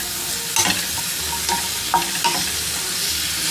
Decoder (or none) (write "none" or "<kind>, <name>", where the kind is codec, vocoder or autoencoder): none